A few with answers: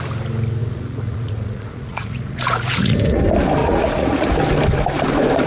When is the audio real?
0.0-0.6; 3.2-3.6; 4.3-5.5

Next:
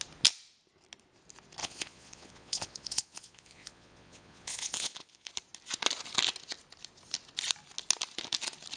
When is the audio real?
0.0-1.6; 5.3-8.8

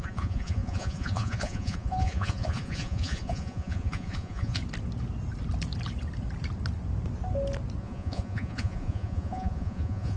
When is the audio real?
4.6-7.8

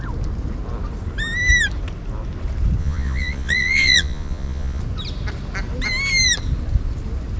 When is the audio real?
0.0-2.8; 4.8-7.4

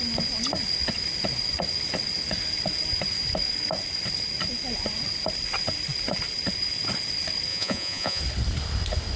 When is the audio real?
0.0-7.5; 8.2-9.2

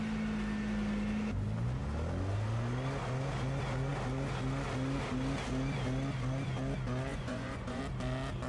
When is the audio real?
0.0-7.1; 7.8-8.5

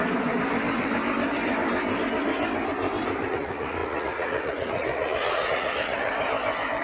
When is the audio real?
0.0-3.3; 6.1-6.8

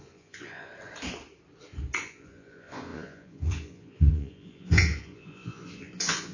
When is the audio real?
0.7-2.0